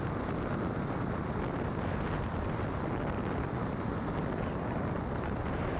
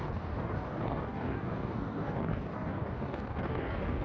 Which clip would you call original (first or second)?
first